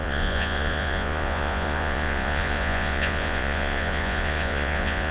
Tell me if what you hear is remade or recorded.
remade